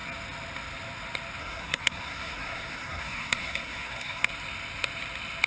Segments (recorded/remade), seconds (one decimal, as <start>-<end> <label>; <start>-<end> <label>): 0.0-1.4 recorded; 1.4-4.3 remade; 4.3-5.5 recorded